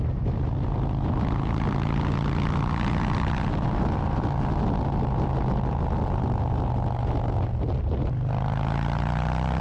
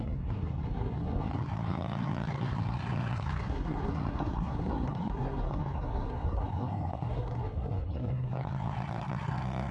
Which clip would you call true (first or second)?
first